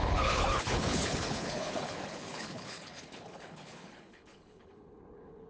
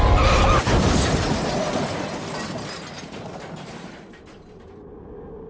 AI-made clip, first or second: first